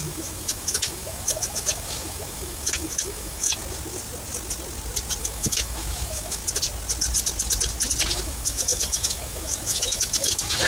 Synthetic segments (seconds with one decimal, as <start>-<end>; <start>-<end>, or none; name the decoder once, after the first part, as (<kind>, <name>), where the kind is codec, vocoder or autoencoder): 0.0-3.6 (autoencoder, DAC-VAE); 5.2-6.4; 8.1-10.7